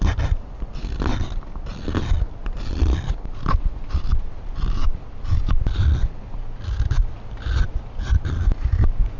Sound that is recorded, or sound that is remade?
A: recorded